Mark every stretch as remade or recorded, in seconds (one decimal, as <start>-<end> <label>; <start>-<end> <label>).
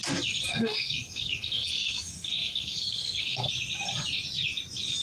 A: 0.0-0.5 recorded; 0.5-3.5 remade; 3.5-5.0 recorded